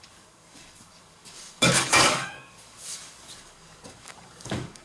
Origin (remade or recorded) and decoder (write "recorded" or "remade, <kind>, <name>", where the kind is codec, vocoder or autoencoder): remade, codec, DAC